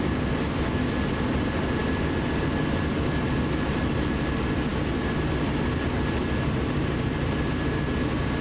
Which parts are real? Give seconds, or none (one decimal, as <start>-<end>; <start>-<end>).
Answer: 0.0-8.4